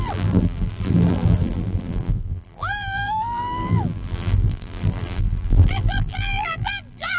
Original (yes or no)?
no